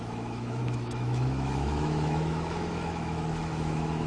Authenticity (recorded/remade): remade